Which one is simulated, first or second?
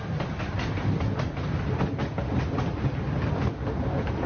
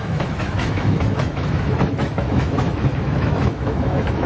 second